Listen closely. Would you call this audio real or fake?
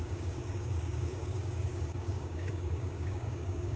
fake